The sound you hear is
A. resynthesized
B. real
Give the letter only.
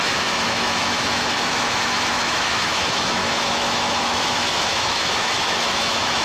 A